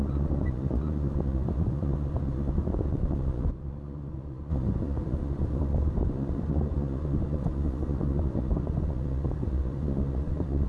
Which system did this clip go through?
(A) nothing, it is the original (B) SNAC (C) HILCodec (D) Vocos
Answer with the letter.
D